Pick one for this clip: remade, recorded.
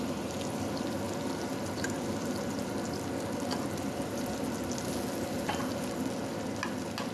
recorded